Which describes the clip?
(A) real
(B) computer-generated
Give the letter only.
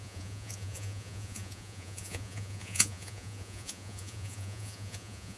B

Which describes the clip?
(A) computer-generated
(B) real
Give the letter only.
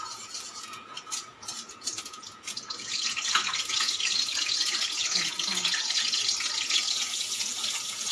A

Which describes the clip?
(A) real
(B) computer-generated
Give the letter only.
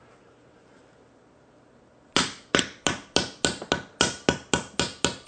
A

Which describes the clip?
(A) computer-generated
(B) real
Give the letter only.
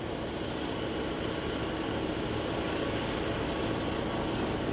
B